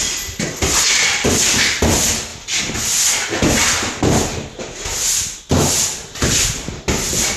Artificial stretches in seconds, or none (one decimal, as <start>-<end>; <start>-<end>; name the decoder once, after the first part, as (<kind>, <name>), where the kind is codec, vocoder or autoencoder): none